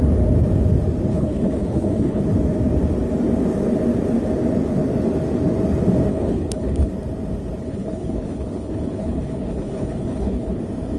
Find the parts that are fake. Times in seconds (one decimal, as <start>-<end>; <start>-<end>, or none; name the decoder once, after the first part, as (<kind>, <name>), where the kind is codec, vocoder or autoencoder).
1.1-2.2 (codec, HILCodec); 6.1-6.9; 7.6-10.6